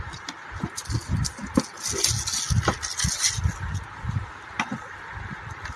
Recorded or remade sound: recorded